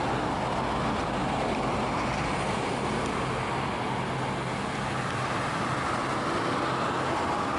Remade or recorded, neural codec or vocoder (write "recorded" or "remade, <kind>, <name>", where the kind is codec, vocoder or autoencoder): recorded